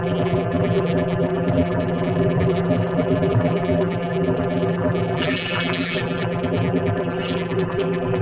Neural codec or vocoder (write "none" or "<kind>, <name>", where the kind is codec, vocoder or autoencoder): vocoder, BigVGAN v2